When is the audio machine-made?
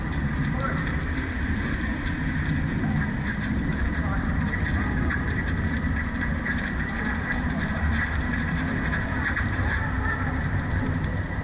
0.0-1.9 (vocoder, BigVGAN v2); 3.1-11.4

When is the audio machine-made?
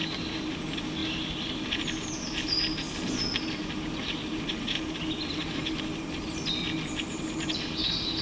none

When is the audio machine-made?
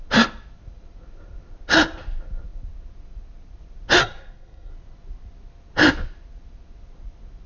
4.0-4.7 (codec, SNAC)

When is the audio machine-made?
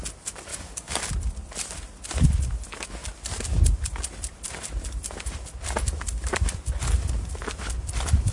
0.5-1.1 (codec, DAC)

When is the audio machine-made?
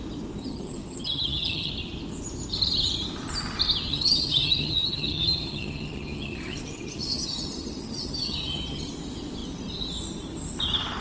0.4-1.7 (vocoder, HiFi-GAN); 3.9-8.9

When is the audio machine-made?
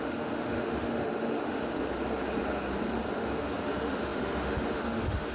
0.0-1.6 (autoencoder, DAC-VAE); 3.1-5.3